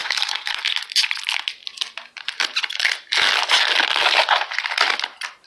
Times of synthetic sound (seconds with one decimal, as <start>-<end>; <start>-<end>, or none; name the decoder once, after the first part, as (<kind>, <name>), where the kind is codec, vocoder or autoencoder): 0.0-0.6 (codec, SNAC)